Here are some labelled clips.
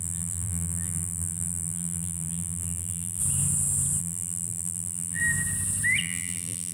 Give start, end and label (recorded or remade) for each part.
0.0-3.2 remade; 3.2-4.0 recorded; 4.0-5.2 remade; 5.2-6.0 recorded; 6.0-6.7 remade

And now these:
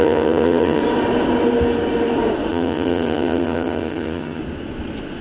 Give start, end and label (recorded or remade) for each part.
0.0-0.8 remade; 0.8-2.5 recorded; 2.5-4.4 remade; 4.4-5.2 recorded

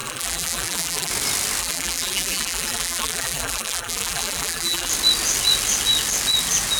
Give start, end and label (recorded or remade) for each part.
0.0-1.1 remade; 1.1-1.6 recorded; 1.6-4.9 remade; 4.9-6.8 recorded

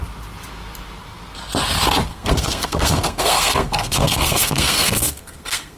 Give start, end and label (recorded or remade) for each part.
0.0-2.1 recorded; 2.1-5.8 remade

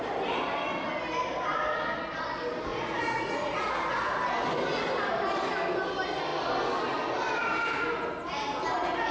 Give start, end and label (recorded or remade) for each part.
0.0-2.7 recorded; 2.7-3.7 remade; 3.7-9.1 recorded

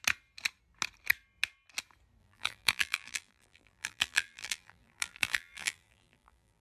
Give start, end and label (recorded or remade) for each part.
0.0-2.2 recorded; 2.2-6.6 remade

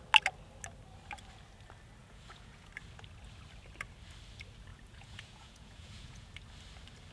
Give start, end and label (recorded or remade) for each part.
0.0-2.0 recorded; 2.0-2.7 remade; 2.7-4.7 recorded; 4.7-6.3 remade; 6.3-7.1 recorded

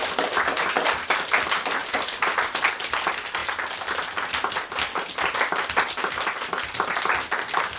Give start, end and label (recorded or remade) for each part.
0.0-7.8 recorded